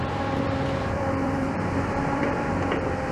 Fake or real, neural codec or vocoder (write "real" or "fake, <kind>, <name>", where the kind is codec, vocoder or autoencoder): fake, vocoder, BigVGAN v2